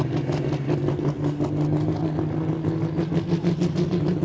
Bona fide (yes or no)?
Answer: yes